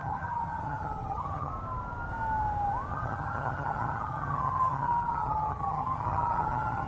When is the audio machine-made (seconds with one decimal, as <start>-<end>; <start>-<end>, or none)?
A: 0.0-1.5; 2.9-6.9